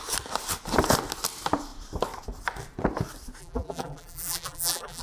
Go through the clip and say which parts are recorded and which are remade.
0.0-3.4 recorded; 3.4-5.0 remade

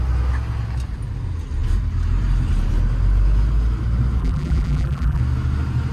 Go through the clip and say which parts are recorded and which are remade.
0.0-4.2 recorded; 4.2-5.2 remade; 5.2-5.9 recorded

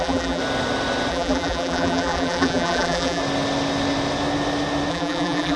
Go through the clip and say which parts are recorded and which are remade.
0.0-0.4 remade; 0.4-1.1 recorded; 1.1-3.2 remade; 3.2-4.9 recorded; 4.9-5.6 remade

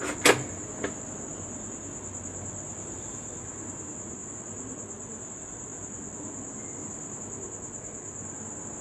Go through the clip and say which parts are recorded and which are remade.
0.0-2.7 recorded; 2.7-3.9 remade; 3.9-8.8 recorded